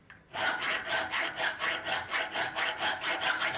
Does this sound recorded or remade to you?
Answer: recorded